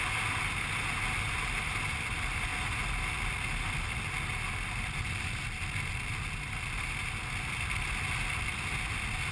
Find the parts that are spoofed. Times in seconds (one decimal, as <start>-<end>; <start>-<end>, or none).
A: none